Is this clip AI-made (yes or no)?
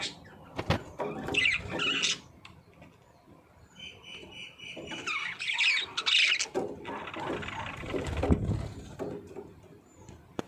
no